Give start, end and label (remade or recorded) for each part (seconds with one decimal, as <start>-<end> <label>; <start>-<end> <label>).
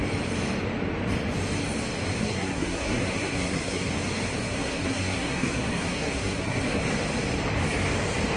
0.0-2.2 recorded; 2.2-3.9 remade; 3.9-4.4 recorded; 4.4-6.8 remade; 6.8-8.4 recorded